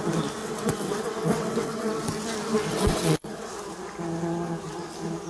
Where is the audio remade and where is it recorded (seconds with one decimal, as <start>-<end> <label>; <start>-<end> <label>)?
0.0-0.4 recorded; 0.4-2.0 remade; 2.0-2.7 recorded; 2.7-3.5 remade; 3.5-5.3 recorded